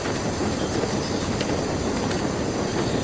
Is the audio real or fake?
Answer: real